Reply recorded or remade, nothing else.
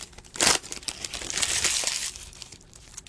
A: remade